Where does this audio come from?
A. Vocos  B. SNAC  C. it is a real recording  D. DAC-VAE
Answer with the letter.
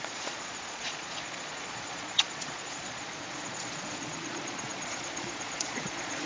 A